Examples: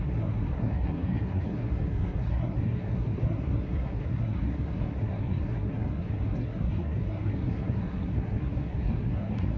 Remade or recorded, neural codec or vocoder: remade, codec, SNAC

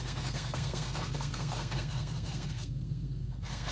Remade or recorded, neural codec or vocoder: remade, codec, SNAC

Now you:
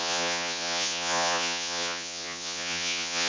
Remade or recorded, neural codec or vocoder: remade, vocoder, Vocos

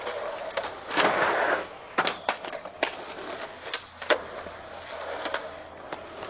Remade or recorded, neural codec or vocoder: recorded